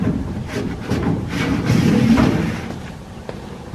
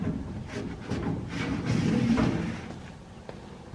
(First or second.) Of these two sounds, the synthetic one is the first